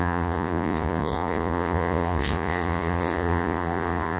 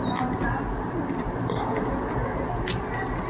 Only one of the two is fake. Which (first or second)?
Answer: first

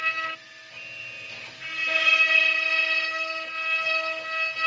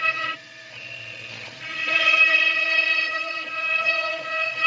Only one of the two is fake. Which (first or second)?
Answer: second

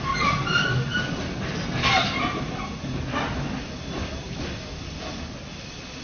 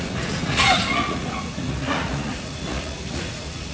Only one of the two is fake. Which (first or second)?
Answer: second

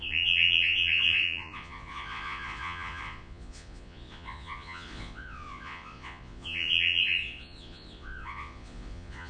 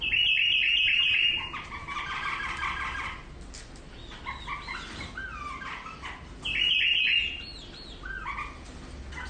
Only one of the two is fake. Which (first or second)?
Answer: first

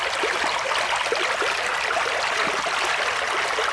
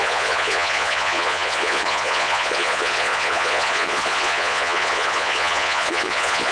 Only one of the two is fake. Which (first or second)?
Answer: second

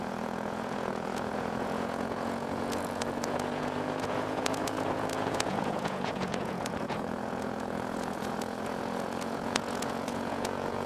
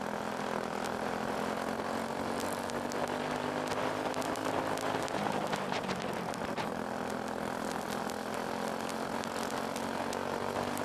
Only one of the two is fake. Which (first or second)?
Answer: first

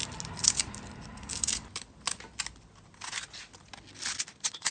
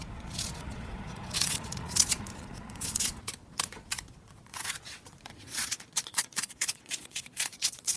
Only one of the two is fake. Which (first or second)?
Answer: second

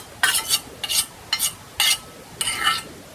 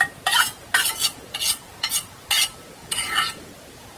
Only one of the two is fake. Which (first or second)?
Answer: second